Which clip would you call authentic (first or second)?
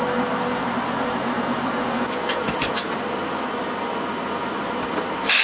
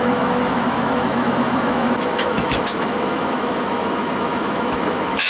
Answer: first